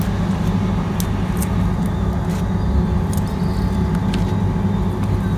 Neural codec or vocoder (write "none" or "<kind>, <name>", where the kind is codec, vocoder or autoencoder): none